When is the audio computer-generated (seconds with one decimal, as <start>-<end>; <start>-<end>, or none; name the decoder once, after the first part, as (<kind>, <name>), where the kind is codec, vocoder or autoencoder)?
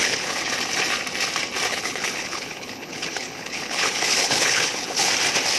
0.0-0.5 (codec, HILCodec); 1.7-5.1